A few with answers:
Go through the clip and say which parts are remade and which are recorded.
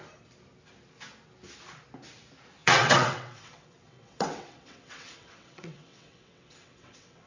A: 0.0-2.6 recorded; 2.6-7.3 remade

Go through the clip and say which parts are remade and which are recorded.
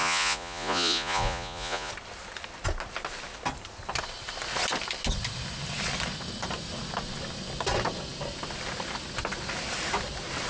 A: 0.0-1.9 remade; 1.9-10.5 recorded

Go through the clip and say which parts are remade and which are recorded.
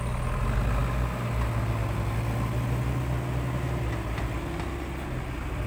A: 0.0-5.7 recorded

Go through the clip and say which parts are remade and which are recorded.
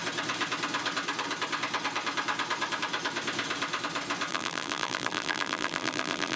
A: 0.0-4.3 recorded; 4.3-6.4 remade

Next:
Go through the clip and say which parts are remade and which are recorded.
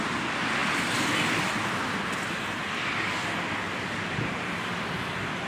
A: 0.0-5.5 recorded